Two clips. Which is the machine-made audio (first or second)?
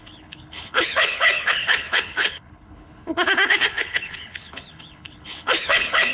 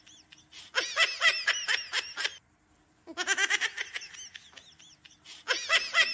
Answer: first